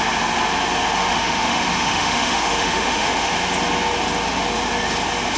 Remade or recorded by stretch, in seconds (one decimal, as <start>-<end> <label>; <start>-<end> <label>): 0.0-1.1 recorded; 1.1-3.3 remade; 3.3-5.4 recorded

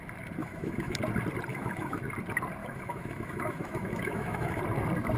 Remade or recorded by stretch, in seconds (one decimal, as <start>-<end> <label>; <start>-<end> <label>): 0.0-0.4 recorded; 0.4-1.0 remade; 1.0-1.5 recorded; 1.5-2.0 remade; 2.0-2.6 recorded; 2.6-4.6 remade; 4.6-5.2 recorded

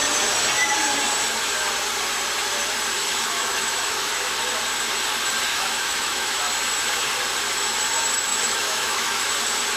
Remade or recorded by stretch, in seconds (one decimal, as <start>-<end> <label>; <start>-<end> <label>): 0.0-3.0 recorded; 3.0-4.1 remade; 4.1-5.5 recorded; 5.5-6.4 remade; 6.4-8.3 recorded; 8.3-9.3 remade; 9.3-9.8 recorded

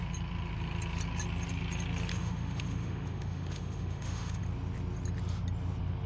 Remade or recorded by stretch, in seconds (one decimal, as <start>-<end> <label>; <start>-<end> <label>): 0.0-2.1 recorded; 2.1-4.4 remade; 4.4-6.1 recorded

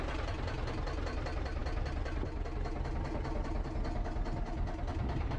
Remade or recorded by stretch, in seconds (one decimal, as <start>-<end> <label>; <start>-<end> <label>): 0.0-5.4 recorded

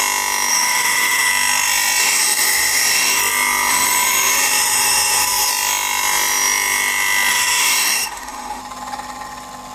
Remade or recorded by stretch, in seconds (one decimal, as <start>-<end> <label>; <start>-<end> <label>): 0.0-0.5 recorded; 0.5-1.3 remade; 1.3-2.0 recorded; 2.0-3.2 remade; 3.2-3.7 recorded; 3.7-5.5 remade; 5.5-7.3 recorded; 7.3-8.6 remade; 8.6-9.7 recorded

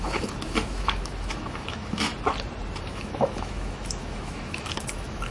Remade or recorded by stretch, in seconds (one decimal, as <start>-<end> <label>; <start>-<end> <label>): 0.0-2.1 remade; 2.1-2.8 recorded; 2.8-5.3 remade

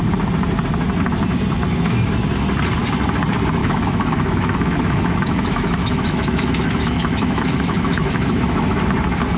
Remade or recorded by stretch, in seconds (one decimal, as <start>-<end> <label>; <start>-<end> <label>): 0.0-3.6 recorded; 3.6-8.8 remade; 8.8-9.4 recorded